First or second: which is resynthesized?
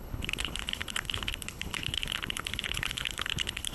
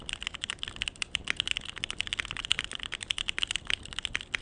first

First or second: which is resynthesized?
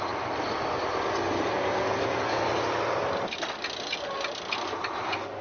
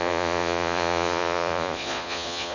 second